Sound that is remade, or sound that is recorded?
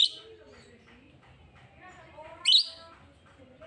recorded